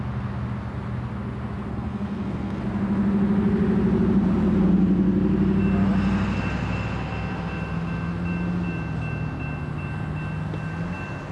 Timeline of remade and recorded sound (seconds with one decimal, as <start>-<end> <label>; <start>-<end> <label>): 0.0-1.7 recorded; 1.7-2.6 remade; 2.6-11.3 recorded